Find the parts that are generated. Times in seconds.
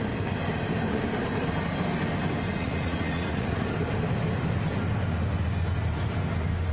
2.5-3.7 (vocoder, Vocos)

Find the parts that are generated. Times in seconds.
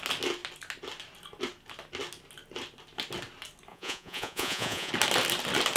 3.7-4.9 (vocoder, Vocos)